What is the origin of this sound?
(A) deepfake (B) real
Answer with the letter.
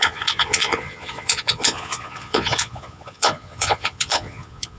A